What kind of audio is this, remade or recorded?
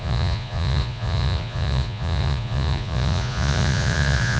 remade